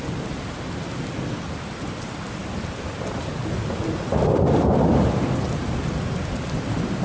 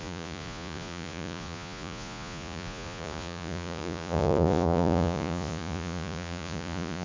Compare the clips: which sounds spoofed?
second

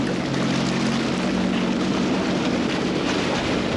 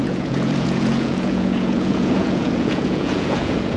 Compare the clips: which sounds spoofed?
second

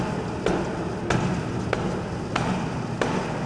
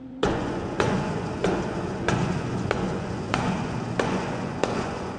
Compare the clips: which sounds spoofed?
second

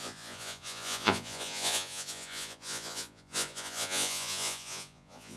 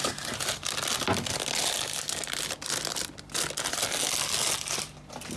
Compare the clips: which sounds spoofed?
first